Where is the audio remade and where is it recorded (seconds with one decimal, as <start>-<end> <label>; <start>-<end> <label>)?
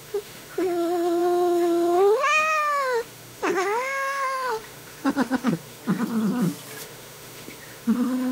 0.0-5.8 remade; 5.8-6.8 recorded; 6.8-8.3 remade